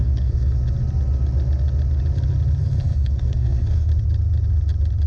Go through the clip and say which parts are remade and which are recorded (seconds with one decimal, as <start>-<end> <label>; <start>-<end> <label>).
0.0-0.6 remade; 0.6-2.6 recorded; 2.6-3.9 remade; 3.9-5.1 recorded